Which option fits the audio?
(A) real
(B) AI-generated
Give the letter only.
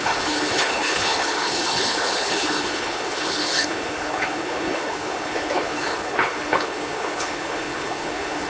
B